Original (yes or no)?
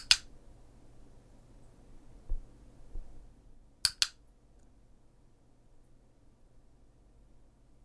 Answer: yes